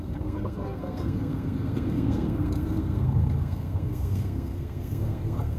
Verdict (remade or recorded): remade